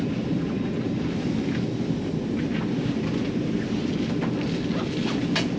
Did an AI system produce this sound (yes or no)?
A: no